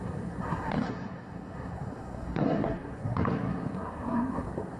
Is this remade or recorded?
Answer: remade